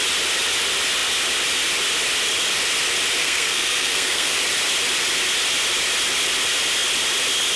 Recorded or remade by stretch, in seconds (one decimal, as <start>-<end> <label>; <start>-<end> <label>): 0.0-3.2 recorded; 3.2-4.4 remade; 4.4-7.6 recorded